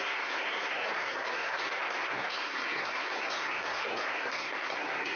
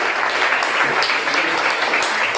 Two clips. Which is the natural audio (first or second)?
second